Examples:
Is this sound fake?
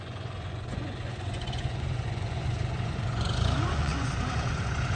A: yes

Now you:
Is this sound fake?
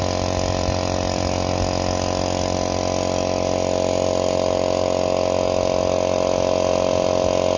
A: no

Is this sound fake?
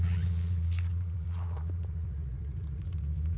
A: yes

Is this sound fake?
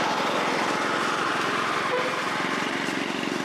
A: no